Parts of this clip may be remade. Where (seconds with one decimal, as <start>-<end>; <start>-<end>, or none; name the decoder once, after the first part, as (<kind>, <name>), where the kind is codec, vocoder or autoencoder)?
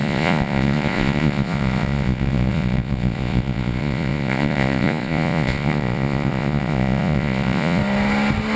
0.0-7.8 (vocoder, Vocos)